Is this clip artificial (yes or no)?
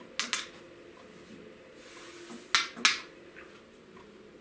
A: no